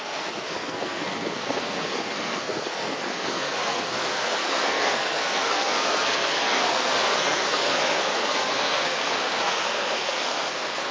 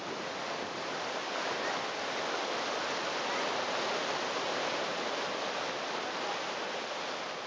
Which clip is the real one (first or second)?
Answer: second